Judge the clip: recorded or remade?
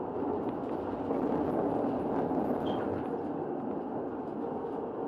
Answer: recorded